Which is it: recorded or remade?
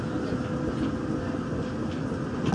recorded